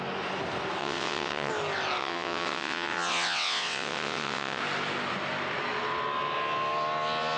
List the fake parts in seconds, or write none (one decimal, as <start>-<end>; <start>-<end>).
0.8-1.5; 2.0-4.6